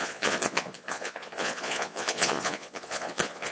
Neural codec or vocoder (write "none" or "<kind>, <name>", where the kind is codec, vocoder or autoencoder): vocoder, Vocos